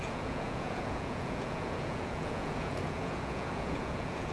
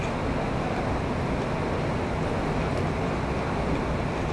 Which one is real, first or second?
second